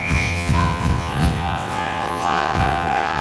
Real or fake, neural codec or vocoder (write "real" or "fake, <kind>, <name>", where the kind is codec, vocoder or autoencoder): fake, vocoder, WaveNeXt